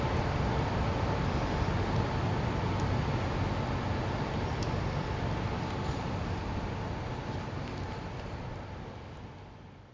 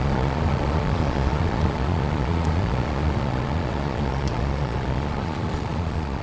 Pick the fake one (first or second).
second